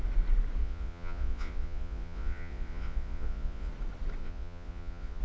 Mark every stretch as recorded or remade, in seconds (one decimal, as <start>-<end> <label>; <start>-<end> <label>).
0.0-0.6 recorded; 0.6-3.7 remade; 3.7-4.2 recorded; 4.2-5.2 remade